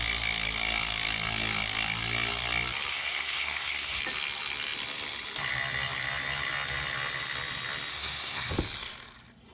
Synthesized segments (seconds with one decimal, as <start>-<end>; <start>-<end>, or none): 2.9-4.0; 7.9-8.5